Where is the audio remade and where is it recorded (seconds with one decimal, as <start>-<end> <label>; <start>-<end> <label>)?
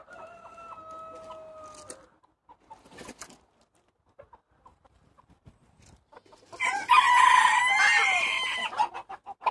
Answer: 0.0-4.7 recorded; 4.7-8.9 remade; 8.9-9.5 recorded